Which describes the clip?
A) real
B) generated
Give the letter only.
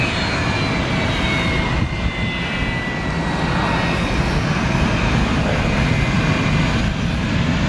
A